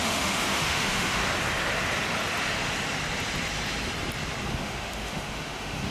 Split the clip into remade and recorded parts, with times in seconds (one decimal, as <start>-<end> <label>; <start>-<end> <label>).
0.0-1.2 remade; 1.2-4.5 recorded; 4.5-5.9 remade